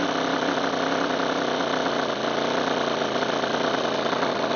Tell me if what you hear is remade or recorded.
recorded